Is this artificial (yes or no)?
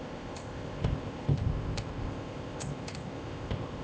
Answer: yes